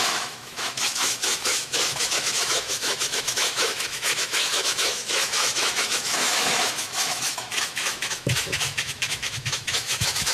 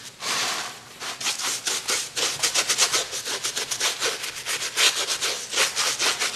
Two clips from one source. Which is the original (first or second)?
second